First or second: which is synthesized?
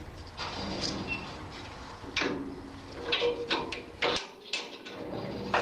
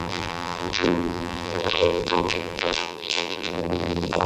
second